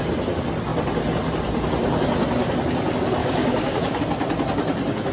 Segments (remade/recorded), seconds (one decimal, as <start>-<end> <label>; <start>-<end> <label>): 0.0-3.2 recorded; 3.2-4.0 remade; 4.0-5.1 recorded